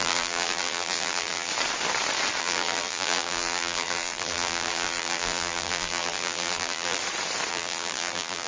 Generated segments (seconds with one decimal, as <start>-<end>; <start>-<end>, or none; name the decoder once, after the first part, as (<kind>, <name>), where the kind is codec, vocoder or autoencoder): 0.0-1.5 (vocoder, BigVGAN v2); 2.4-7.0; 7.5-8.5